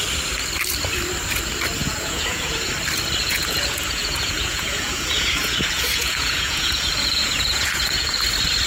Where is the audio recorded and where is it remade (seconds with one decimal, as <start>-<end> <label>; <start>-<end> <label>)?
0.0-1.8 recorded; 1.8-2.7 remade; 2.7-3.2 recorded; 3.2-8.2 remade; 8.2-8.7 recorded